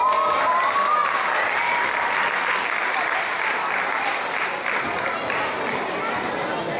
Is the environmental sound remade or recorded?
recorded